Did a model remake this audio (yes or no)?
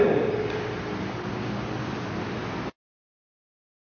no